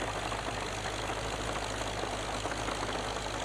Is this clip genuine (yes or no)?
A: yes